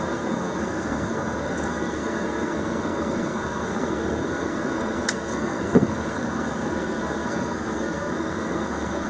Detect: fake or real fake